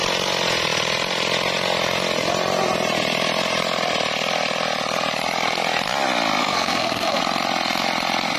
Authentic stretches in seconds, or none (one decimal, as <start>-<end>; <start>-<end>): 0.0-6.4; 7.2-8.4